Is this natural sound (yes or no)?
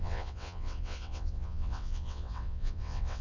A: no